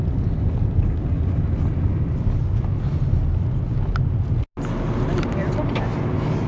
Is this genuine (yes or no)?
yes